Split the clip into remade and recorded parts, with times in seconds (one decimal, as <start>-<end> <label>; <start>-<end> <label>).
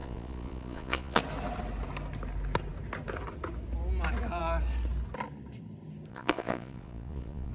0.0-1.2 remade; 1.2-6.1 recorded; 6.1-7.5 remade